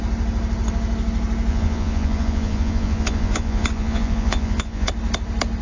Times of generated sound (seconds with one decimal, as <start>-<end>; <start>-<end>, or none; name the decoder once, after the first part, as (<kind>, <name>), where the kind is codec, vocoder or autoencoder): 1.5-4.9 (vocoder, Vocos)